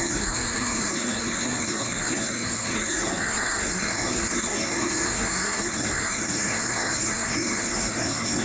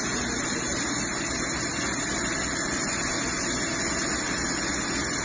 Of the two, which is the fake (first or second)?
first